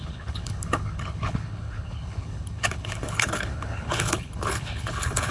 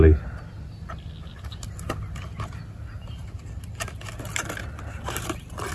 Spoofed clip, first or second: first